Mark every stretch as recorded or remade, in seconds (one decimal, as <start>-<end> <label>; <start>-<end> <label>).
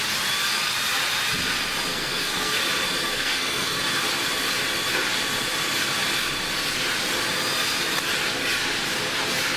0.0-1.9 recorded; 1.9-2.6 remade; 2.6-3.0 recorded; 3.0-3.8 remade; 3.8-9.6 recorded